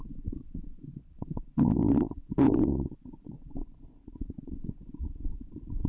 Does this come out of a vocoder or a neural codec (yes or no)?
yes